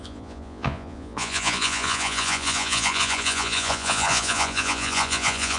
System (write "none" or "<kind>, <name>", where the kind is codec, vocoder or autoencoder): vocoder, Vocos